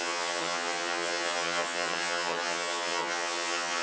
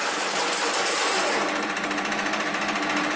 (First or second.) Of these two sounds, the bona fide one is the second